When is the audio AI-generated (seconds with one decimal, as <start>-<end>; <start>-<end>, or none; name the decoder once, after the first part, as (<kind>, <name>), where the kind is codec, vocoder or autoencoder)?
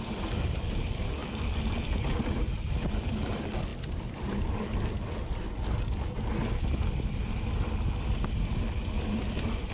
none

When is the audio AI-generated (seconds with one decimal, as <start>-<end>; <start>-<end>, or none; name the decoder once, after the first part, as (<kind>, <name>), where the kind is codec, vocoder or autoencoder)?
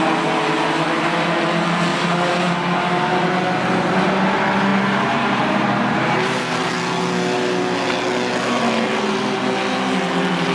1.9-2.5 (vocoder, BigVGAN v2); 4.7-6.7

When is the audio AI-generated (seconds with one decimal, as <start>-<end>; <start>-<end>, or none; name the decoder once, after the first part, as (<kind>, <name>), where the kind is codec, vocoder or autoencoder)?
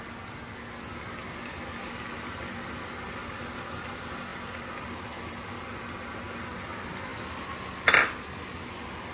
none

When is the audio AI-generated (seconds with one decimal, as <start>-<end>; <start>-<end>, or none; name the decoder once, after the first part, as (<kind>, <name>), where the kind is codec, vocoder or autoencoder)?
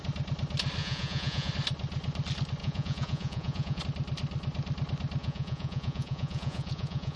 0.8-1.5 (vocoder, Vocos); 2.6-3.8; 5.2-7.2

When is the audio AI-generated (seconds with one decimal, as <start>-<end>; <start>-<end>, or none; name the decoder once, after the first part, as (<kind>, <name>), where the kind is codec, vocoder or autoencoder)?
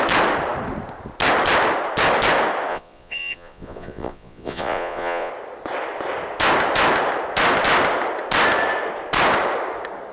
2.7-5.3 (vocoder, Vocos)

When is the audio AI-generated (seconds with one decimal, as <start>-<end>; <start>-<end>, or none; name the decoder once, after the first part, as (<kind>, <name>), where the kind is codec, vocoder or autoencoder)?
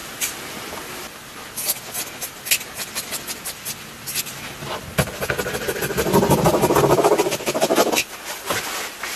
6.5-9.2 (vocoder, BigVGAN v2)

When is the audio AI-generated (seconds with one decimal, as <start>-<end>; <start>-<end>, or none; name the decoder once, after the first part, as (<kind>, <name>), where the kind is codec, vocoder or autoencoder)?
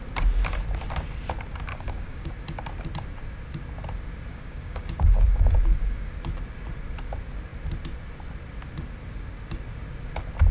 1.7-2.3 (codec, DAC); 4.3-6.1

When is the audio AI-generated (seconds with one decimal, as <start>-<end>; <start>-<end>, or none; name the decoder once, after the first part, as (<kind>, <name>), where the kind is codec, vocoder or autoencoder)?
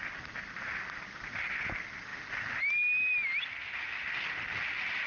none